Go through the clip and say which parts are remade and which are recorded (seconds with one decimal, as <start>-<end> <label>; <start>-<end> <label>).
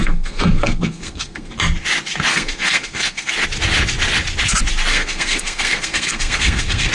0.0-1.5 remade; 1.5-2.3 recorded; 2.3-3.3 remade; 3.3-4.9 recorded; 4.9-6.9 remade